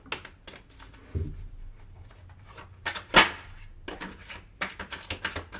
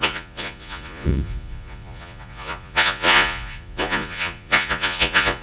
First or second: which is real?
first